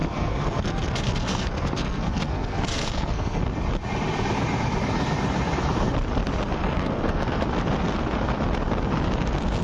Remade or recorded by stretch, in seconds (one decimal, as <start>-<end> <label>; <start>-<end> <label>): 0.0-3.4 remade; 3.4-6.6 recorded; 6.6-7.4 remade; 7.4-9.6 recorded